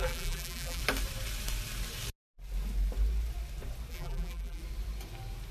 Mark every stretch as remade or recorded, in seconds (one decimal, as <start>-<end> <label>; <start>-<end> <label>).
0.0-0.8 remade; 0.8-3.9 recorded; 3.9-4.6 remade; 4.6-5.5 recorded

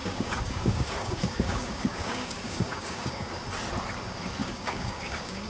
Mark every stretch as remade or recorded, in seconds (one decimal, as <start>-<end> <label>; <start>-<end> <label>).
0.0-3.3 remade; 3.3-4.4 recorded; 4.4-5.5 remade

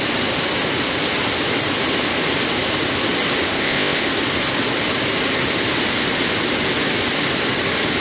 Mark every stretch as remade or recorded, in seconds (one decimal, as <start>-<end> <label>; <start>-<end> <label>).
0.0-3.5 recorded; 3.5-4.1 remade; 4.1-8.0 recorded

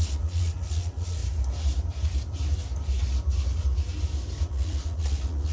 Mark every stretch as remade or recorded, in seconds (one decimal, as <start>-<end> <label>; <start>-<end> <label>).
0.0-1.2 remade; 1.2-4.5 recorded; 4.5-5.5 remade

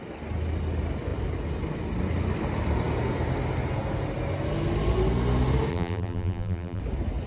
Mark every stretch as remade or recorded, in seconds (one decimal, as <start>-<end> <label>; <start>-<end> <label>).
0.0-5.7 recorded; 5.7-6.8 remade; 6.8-7.3 recorded